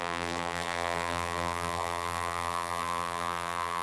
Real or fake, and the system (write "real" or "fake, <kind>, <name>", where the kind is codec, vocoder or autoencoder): fake, vocoder, BigVGAN v2